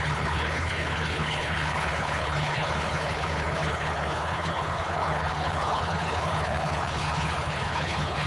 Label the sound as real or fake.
fake